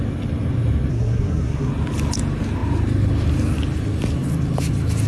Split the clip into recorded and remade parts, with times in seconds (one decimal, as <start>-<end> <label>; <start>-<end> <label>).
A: 0.0-0.9 recorded; 0.9-1.7 remade; 1.7-5.1 recorded